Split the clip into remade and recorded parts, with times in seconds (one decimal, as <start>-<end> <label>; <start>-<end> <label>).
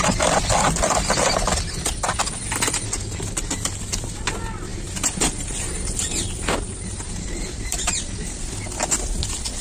0.0-4.7 recorded; 4.7-6.0 remade; 6.0-6.7 recorded; 6.7-8.0 remade; 8.0-9.6 recorded